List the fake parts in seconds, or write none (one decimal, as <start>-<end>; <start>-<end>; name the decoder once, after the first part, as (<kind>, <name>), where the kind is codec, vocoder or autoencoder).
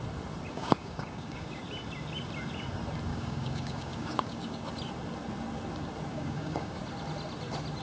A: 0.5-1.6 (codec, DAC); 3.1-4.7; 6.1-6.8